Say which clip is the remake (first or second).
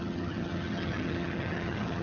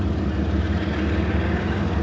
first